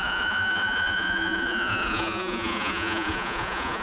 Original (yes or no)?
no